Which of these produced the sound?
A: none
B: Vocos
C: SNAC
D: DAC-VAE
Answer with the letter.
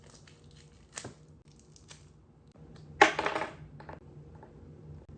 A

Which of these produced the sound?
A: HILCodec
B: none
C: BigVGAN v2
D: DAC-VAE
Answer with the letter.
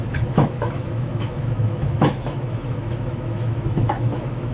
D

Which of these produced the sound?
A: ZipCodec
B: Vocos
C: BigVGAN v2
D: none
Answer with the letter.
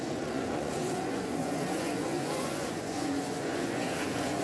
B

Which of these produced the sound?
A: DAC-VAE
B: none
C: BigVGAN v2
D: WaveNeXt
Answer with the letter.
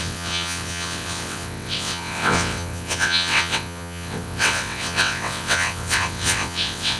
D